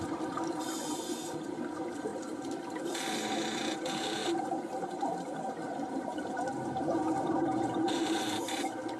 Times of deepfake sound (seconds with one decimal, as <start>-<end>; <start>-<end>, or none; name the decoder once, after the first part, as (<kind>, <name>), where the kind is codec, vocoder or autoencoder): 4.2-8.6 (vocoder, BigVGAN v2)